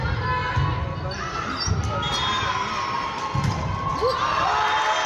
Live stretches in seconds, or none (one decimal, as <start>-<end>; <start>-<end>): 0.0-5.1